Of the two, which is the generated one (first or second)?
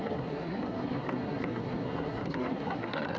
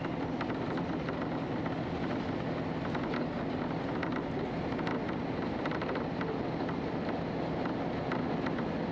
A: first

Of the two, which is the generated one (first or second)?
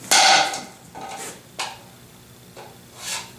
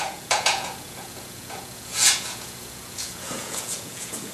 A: second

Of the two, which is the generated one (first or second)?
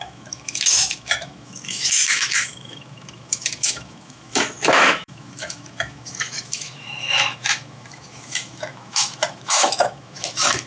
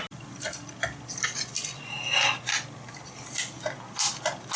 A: first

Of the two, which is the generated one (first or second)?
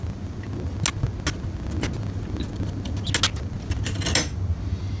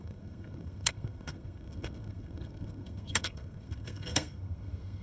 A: second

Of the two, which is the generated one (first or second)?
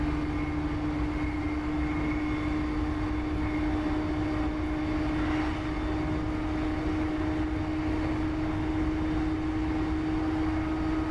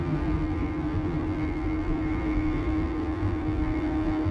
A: second